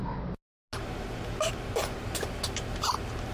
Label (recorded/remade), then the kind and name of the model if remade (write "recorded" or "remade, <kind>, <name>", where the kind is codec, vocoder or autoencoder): recorded